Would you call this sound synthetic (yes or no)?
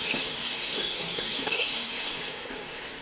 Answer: yes